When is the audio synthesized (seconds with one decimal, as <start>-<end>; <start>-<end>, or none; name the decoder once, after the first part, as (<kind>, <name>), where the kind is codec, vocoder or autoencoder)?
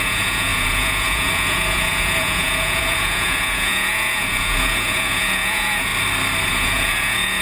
0.0-5.9 (vocoder, Vocos); 6.5-7.4